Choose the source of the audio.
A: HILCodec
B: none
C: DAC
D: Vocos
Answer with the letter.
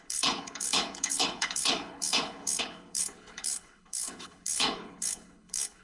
A